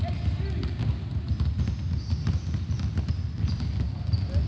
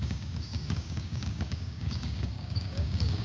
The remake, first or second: second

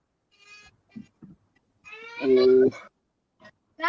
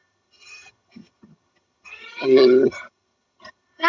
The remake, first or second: second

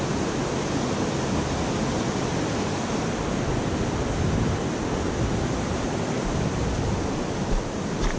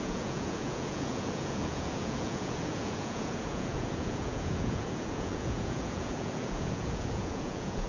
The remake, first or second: second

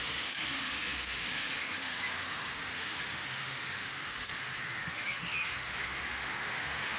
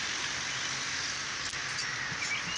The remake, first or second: first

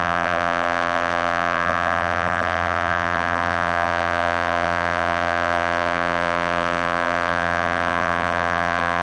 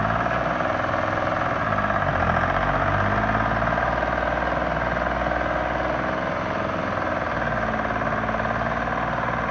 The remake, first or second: first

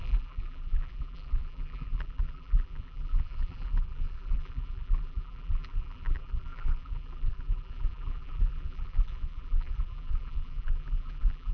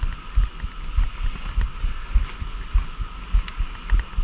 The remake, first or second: first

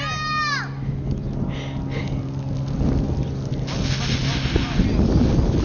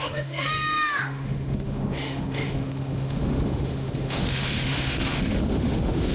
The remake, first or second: second